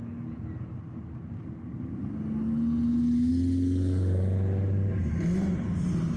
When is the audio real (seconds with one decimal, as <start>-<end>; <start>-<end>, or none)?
0.0-6.2